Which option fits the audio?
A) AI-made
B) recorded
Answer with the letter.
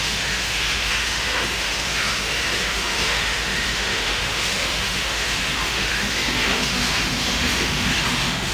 A